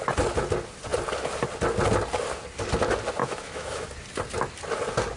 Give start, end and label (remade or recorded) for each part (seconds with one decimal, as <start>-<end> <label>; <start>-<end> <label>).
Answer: 0.0-3.2 recorded; 3.2-3.9 remade; 3.9-5.2 recorded